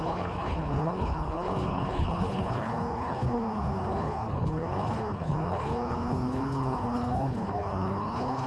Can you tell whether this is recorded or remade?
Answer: remade